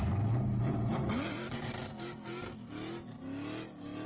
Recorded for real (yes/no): yes